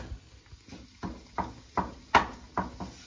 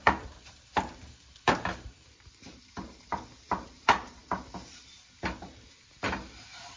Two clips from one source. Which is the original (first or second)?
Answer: first